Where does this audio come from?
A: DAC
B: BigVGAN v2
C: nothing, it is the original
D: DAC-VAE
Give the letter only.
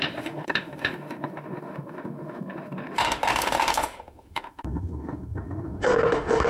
D